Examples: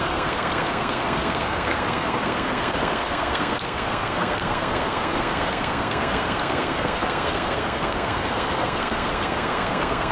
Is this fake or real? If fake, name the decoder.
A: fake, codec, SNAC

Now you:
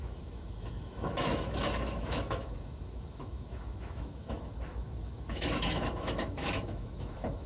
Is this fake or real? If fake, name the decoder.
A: fake, autoencoder, DAC-VAE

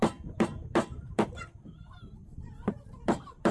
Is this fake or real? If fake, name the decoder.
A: fake, vocoder, BigVGAN v2